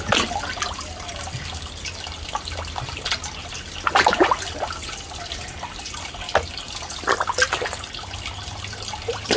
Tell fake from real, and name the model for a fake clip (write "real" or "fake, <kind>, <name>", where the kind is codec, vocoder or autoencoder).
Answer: real